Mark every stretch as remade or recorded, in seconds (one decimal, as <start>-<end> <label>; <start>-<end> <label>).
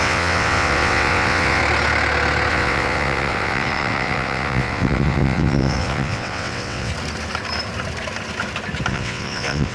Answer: 0.0-1.6 remade; 1.6-2.5 recorded; 2.5-6.9 remade; 6.9-8.9 recorded; 8.9-9.7 remade